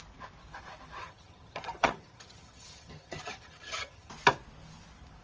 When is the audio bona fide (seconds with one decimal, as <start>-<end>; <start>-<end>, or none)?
0.0-1.0; 4.1-5.2